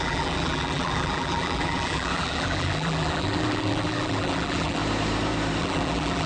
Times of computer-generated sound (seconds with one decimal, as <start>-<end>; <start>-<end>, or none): 0.0-4.8; 5.6-6.3